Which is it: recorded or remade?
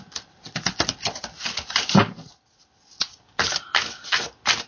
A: recorded